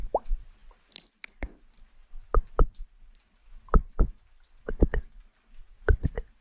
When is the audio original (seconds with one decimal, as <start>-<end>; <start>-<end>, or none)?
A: 0.0-6.4